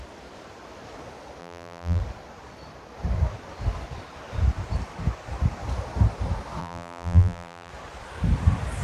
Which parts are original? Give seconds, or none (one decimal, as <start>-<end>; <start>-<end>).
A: 0.0-1.4; 2.0-6.6; 7.7-8.8